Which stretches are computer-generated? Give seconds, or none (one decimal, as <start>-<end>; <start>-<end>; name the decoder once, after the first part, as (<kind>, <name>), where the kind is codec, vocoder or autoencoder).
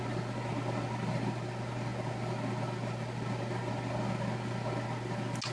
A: none